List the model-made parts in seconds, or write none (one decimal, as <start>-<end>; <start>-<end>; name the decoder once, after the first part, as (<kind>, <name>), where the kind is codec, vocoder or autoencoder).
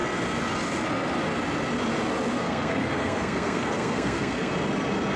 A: 2.3-4.5 (codec, SNAC)